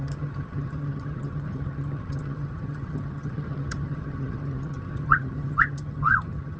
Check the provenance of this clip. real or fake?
fake